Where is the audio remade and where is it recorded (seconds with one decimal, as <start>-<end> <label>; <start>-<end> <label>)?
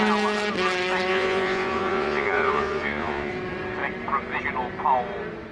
0.0-1.1 recorded; 1.1-3.3 remade; 3.3-5.5 recorded